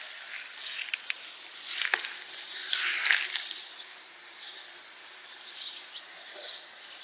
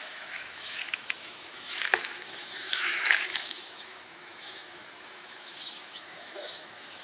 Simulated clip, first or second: second